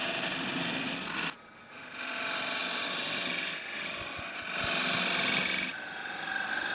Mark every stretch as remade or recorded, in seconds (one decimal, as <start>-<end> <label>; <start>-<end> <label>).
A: 0.0-6.7 recorded